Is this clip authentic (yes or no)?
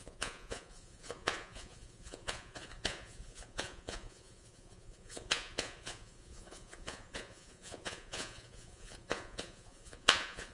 no